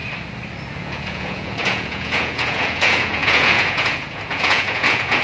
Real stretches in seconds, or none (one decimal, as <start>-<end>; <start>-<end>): 0.0-0.7